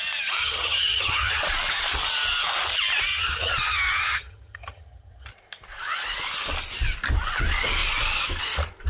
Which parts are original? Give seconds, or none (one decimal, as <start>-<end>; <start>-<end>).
0.0-0.4; 1.4-3.1; 5.3-8.9